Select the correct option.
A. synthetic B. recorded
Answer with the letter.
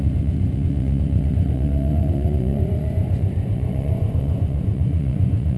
A